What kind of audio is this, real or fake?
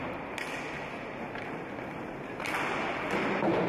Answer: real